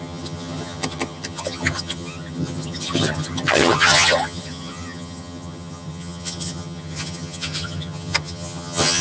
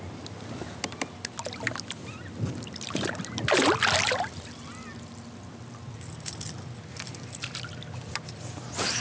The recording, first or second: second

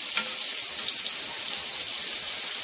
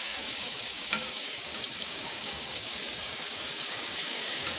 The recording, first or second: first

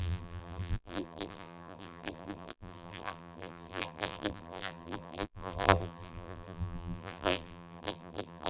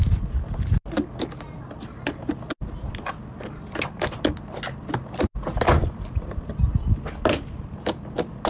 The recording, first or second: second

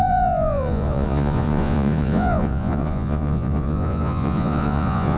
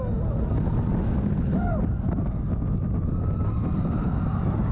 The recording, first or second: second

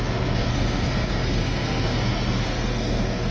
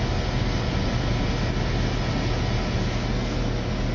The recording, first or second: second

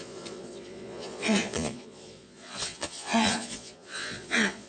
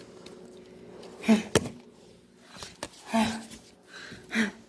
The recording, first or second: second